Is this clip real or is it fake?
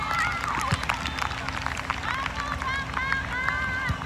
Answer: real